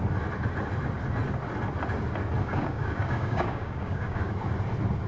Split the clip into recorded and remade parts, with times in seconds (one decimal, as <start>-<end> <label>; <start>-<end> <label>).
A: 0.0-2.4 recorded; 2.4-4.3 remade; 4.3-5.1 recorded